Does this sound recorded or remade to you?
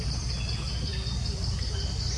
recorded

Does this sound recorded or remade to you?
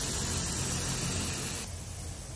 recorded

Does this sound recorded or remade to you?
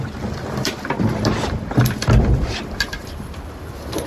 remade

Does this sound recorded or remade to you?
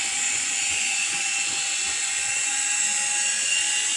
remade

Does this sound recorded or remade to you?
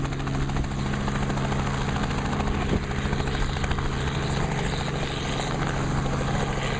recorded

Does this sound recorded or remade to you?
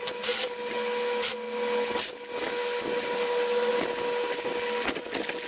recorded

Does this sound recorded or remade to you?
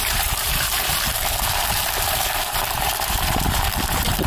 remade